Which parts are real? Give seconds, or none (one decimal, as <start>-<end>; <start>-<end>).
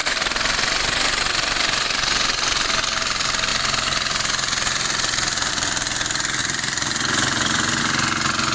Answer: 0.0-3.5; 5.5-6.4; 7.8-8.5